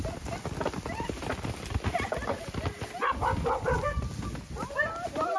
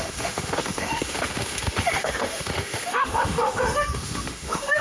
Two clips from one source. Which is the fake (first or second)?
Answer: second